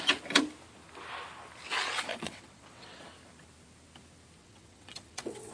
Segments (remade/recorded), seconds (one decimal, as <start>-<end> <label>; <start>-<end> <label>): 0.0-2.1 recorded; 2.1-3.0 remade; 3.0-4.4 recorded; 4.4-5.5 remade